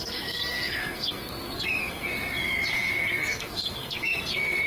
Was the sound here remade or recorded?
remade